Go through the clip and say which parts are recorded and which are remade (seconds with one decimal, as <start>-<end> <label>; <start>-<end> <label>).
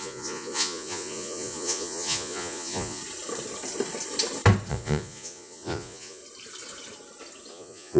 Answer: 0.0-3.0 remade; 3.0-4.7 recorded; 4.7-6.2 remade; 6.2-7.5 recorded; 7.5-8.0 remade